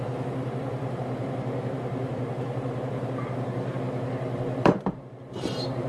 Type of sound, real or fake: fake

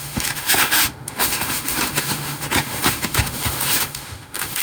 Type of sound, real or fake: fake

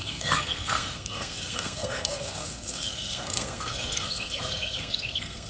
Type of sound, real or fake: fake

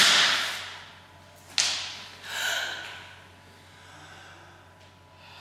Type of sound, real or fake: real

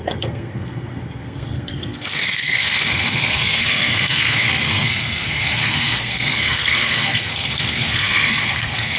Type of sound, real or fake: fake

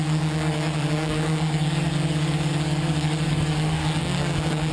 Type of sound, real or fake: fake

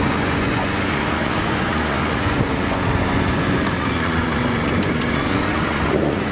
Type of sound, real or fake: fake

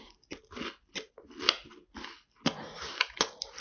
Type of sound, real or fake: real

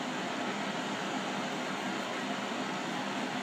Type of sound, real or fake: real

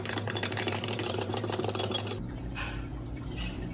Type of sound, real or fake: fake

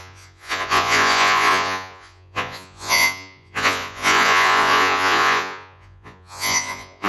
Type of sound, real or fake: fake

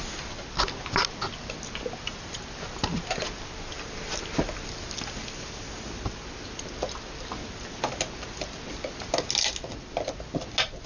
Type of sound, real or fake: real